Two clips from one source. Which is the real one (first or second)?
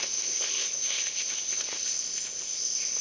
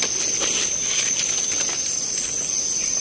second